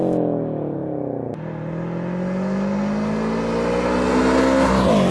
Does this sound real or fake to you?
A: real